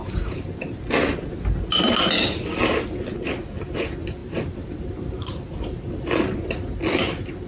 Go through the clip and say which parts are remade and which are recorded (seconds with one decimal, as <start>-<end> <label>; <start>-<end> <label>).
0.0-0.8 remade; 0.8-4.2 recorded; 4.2-6.1 remade; 6.1-7.5 recorded